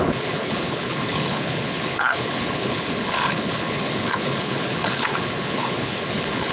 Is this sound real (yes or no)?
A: no